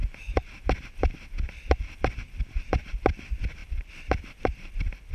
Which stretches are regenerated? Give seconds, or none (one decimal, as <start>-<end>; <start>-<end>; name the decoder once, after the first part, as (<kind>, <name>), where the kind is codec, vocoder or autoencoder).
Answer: 3.6-5.1 (vocoder, BigVGAN v2)